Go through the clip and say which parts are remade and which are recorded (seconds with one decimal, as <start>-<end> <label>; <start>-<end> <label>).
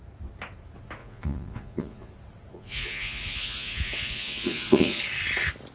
0.0-1.0 recorded; 1.0-2.1 remade; 2.1-2.5 recorded; 2.5-5.0 remade; 5.0-5.7 recorded